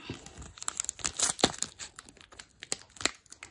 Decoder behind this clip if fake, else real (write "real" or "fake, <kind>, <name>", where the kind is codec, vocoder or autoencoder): real